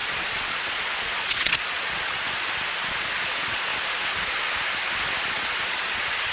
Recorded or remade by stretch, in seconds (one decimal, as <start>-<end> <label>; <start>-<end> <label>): 0.0-2.2 remade; 2.2-2.9 recorded; 2.9-3.7 remade; 3.7-5.3 recorded; 5.3-6.3 remade